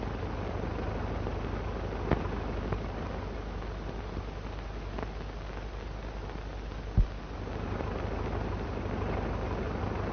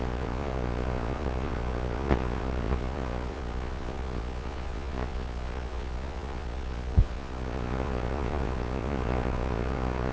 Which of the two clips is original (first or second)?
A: first